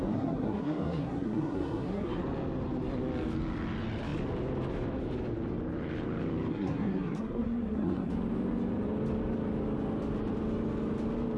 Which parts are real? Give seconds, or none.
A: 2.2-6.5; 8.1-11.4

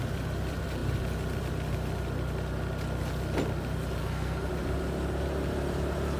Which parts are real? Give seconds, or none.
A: 0.0-4.0; 4.5-6.2

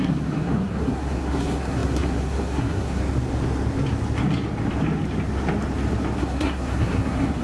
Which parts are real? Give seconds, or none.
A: 3.0-6.2